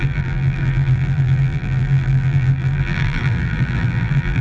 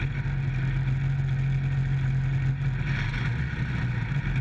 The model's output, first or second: first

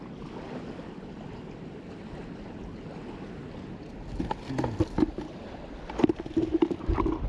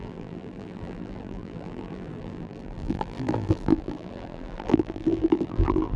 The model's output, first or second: second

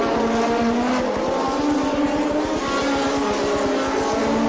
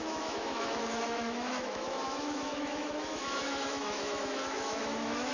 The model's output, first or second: second